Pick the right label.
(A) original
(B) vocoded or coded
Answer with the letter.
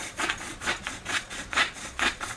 B